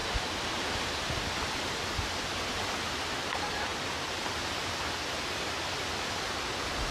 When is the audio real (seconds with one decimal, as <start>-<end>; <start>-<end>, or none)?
0.0-6.9